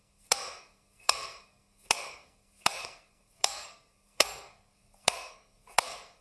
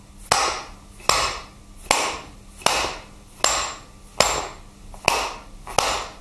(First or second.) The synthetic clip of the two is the first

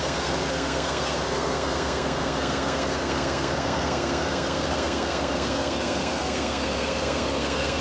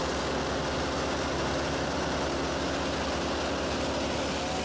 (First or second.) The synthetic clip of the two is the first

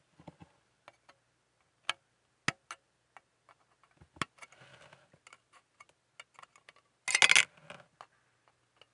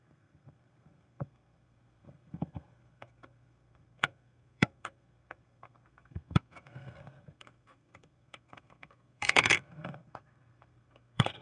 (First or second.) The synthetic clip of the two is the second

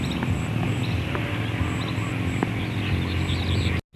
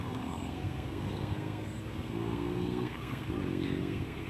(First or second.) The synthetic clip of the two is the second